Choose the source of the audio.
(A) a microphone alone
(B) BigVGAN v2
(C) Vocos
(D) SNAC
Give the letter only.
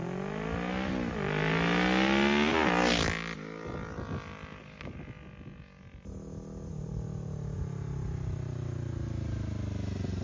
A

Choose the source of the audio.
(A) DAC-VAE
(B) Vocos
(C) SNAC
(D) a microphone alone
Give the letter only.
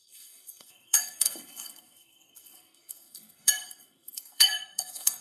C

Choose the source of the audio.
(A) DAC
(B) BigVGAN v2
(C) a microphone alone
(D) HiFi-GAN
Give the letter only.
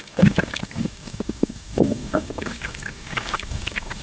A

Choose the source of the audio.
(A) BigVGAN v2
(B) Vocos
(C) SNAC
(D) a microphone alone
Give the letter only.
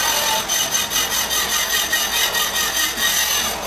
D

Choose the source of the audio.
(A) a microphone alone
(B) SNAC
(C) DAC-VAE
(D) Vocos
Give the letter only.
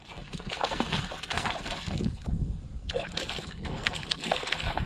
B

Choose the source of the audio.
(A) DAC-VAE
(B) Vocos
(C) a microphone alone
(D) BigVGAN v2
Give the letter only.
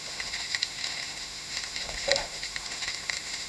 A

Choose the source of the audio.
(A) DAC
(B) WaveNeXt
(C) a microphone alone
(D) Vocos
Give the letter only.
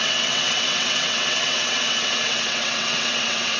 B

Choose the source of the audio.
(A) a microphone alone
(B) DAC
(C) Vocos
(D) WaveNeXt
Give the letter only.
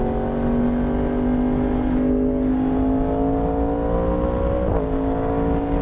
A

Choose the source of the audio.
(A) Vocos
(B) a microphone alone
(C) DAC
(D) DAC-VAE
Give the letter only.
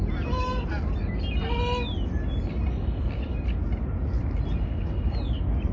B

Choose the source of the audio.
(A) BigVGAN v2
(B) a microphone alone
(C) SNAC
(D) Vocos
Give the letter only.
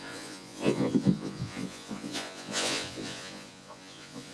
D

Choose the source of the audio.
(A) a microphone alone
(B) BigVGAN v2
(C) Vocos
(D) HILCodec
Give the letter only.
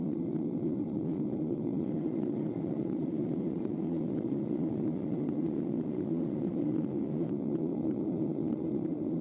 C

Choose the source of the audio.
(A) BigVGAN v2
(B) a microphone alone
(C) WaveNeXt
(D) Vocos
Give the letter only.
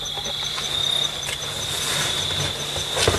B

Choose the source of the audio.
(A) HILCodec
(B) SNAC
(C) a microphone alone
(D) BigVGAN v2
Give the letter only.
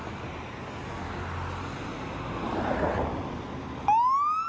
C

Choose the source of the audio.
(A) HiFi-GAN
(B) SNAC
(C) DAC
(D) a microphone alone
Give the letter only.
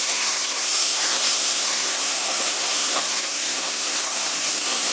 B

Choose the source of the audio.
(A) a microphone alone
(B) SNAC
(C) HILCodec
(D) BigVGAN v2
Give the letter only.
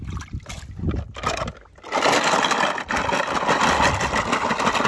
A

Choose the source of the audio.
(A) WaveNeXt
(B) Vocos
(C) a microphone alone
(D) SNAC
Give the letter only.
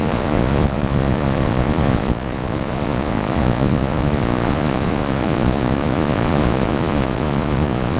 B